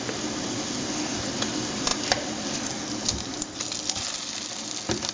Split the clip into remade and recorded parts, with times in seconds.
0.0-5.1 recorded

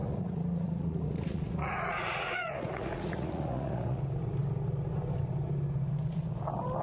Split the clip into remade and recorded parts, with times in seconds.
0.0-4.0 remade; 4.0-6.8 recorded

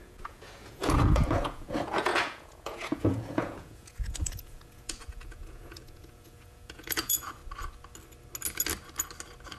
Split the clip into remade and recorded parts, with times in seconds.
0.0-7.4 remade; 7.4-9.6 recorded

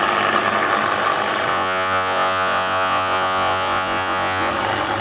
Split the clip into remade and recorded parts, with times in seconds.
0.0-1.5 recorded; 1.5-4.5 remade; 4.5-5.0 recorded